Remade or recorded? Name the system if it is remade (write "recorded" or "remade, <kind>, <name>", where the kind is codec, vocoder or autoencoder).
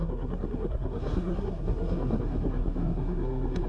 remade, codec, SNAC